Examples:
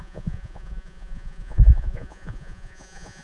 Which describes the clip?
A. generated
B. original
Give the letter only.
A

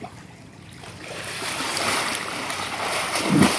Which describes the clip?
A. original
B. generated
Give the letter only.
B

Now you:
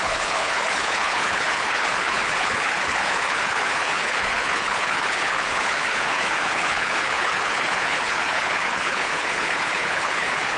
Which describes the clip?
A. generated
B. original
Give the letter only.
A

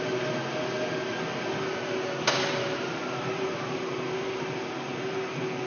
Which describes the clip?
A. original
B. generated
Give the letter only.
A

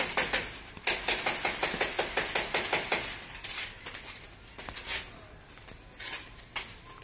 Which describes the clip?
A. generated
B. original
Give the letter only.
B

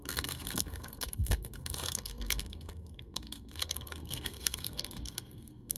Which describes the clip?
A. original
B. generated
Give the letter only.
B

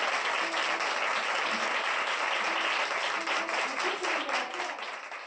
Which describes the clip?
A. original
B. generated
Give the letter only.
A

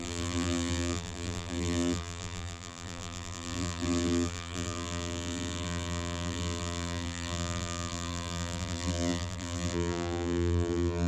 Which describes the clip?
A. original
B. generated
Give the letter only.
B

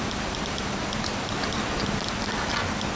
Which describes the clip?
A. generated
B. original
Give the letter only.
B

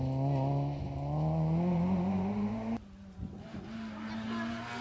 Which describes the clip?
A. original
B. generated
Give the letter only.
A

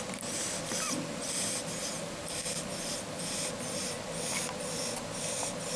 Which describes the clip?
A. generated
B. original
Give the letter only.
B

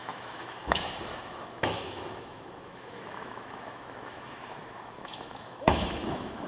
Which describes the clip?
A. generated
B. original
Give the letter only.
A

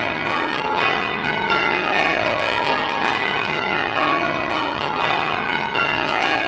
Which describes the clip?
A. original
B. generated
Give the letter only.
B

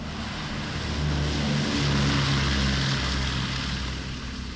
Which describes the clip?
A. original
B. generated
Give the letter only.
A